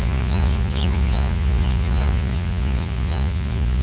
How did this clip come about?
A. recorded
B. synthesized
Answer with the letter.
B